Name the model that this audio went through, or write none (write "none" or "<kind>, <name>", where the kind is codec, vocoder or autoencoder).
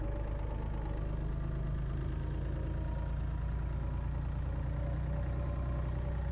none